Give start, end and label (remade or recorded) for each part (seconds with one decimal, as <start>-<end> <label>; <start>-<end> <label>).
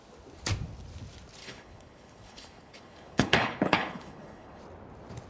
0.0-1.4 recorded; 1.4-4.6 remade; 4.6-5.3 recorded